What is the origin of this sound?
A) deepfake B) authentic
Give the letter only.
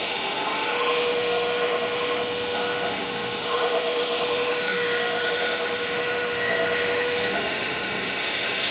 A